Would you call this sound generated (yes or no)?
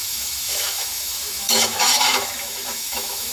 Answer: yes